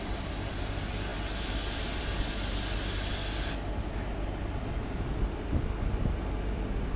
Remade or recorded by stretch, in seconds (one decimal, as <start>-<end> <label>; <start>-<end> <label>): 0.0-7.0 recorded